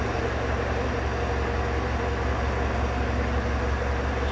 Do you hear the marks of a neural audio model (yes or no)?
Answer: no